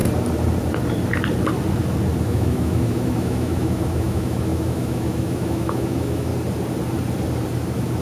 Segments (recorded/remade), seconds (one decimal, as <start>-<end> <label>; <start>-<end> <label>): 0.0-2.2 recorded; 2.2-6.3 remade; 6.3-8.0 recorded